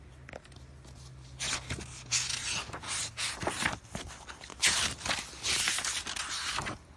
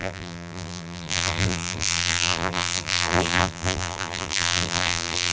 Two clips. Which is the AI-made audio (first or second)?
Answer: second